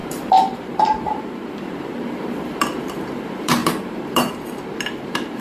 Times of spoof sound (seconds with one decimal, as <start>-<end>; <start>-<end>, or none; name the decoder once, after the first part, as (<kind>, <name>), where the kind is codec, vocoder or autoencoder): 0.0-5.4 (vocoder, BigVGAN v2)